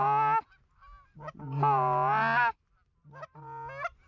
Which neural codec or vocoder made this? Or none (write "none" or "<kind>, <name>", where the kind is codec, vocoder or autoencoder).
none